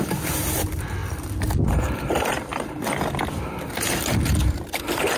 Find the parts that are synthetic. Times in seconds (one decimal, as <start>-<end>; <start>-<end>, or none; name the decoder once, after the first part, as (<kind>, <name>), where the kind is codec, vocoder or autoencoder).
0.0-1.0 (vocoder, BigVGAN v2); 1.7-2.5; 4.4-5.2